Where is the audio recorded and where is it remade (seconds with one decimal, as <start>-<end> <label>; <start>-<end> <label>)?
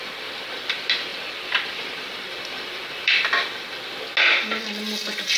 0.0-1.1 recorded; 1.1-3.9 remade; 3.9-5.4 recorded